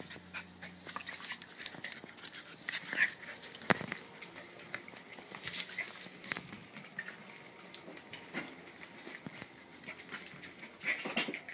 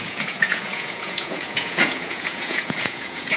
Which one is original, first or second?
first